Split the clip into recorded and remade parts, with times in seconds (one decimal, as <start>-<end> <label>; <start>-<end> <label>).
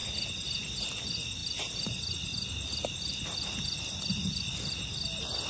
0.0-1.4 recorded; 1.4-2.0 remade; 2.0-2.8 recorded; 2.8-4.7 remade; 4.7-5.5 recorded